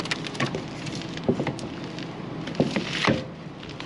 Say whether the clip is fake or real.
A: real